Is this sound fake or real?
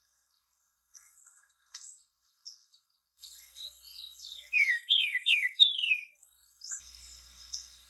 fake